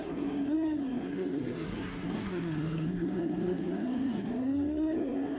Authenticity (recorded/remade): remade